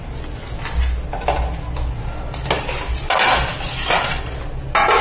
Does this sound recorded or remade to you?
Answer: recorded